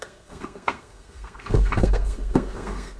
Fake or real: fake